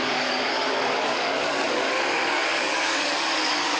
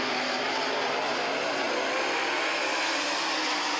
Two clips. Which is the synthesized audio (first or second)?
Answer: first